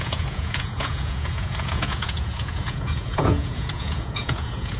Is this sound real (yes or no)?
no